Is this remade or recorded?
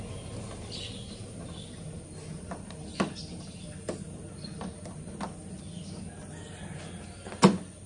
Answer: recorded